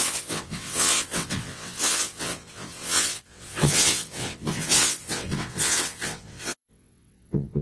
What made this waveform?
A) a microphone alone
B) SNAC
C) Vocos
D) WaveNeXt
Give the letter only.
D